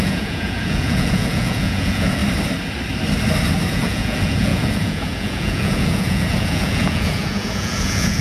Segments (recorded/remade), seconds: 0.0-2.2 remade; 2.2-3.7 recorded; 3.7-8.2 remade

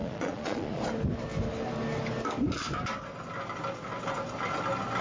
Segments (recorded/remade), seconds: 0.0-0.8 remade; 0.8-5.0 recorded

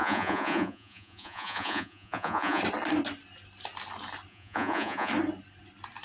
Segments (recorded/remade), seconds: 0.0-2.6 remade; 2.6-4.3 recorded; 4.3-5.1 remade; 5.1-6.0 recorded

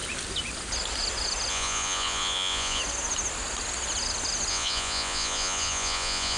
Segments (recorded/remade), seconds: 0.0-1.5 recorded; 1.5-2.8 remade; 2.8-4.5 recorded; 4.5-6.4 remade